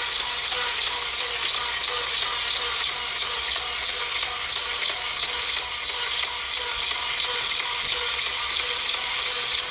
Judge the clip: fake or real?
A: real